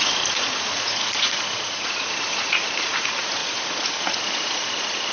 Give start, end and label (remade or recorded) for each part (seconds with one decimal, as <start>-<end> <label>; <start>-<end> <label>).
0.0-5.1 remade